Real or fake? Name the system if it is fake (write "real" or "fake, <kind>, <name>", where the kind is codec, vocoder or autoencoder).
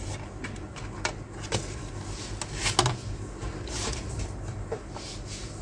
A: real